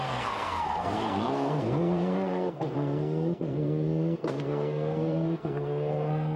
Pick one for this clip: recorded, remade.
remade